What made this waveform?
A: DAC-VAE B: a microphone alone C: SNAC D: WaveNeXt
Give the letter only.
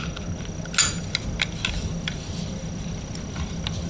B